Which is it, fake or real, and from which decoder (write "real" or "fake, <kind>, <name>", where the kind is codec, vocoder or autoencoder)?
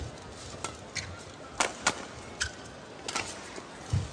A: real